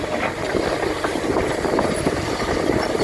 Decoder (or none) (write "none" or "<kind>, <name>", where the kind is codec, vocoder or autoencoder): vocoder, BigVGAN v2